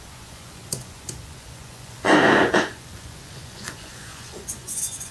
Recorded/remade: remade